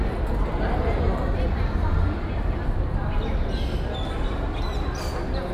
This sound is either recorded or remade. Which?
recorded